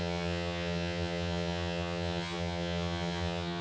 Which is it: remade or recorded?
remade